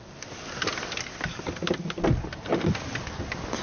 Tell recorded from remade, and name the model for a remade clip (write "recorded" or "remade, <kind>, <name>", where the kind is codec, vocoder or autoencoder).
recorded